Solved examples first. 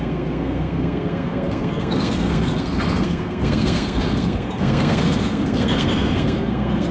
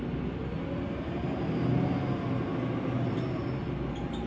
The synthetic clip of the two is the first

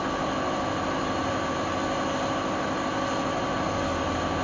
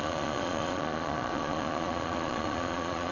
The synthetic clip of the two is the second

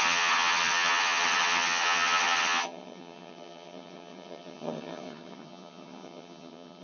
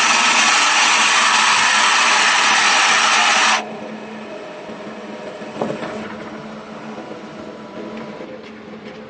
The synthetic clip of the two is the first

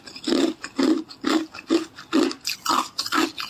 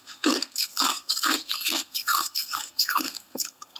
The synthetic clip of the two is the second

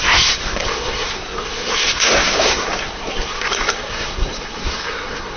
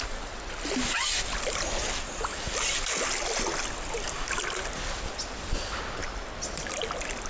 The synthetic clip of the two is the first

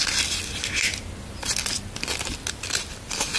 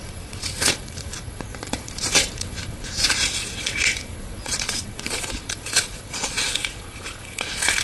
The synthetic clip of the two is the second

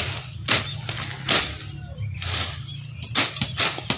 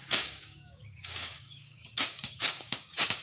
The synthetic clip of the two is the second